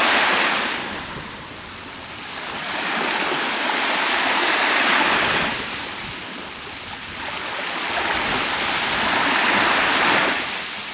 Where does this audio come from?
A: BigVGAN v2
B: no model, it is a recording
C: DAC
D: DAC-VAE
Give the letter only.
B